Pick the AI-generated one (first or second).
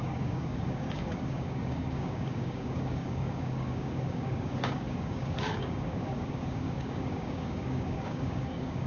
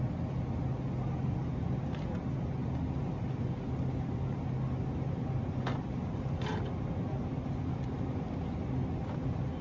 first